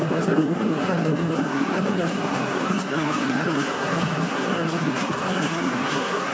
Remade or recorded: remade